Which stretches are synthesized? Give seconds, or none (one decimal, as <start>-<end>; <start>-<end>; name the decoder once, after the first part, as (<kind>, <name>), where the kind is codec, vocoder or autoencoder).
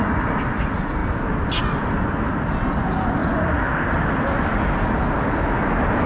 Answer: none